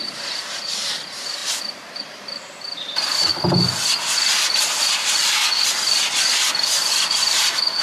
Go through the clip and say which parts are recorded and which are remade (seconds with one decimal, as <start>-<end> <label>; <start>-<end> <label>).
0.0-3.3 remade; 3.3-4.5 recorded; 4.5-5.4 remade; 5.4-7.1 recorded; 7.1-7.8 remade